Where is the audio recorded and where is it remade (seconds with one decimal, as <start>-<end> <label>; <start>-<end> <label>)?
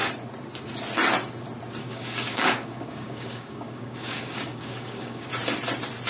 0.0-1.8 recorded; 1.8-5.3 remade; 5.3-6.1 recorded